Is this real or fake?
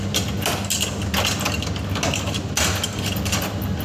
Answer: real